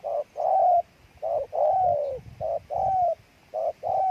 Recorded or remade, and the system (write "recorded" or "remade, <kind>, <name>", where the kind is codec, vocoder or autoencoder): recorded